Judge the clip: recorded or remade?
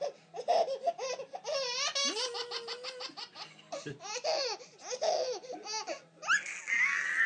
recorded